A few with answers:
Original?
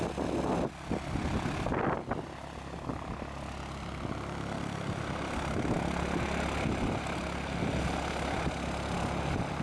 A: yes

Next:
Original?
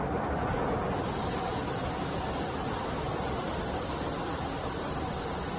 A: yes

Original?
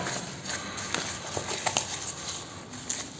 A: yes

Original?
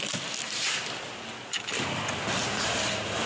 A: yes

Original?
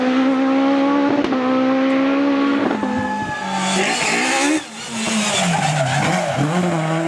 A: yes